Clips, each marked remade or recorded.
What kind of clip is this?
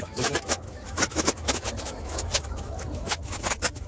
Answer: remade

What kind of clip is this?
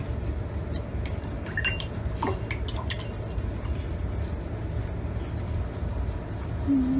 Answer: recorded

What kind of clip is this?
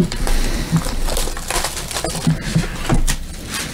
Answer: recorded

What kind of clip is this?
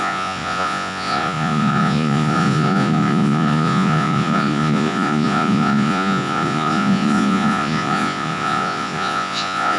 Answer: remade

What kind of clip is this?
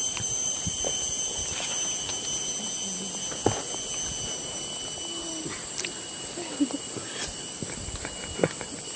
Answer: recorded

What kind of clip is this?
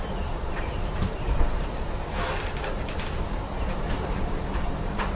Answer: remade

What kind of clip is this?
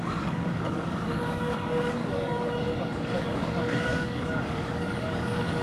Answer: remade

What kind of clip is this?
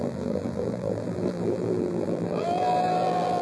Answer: remade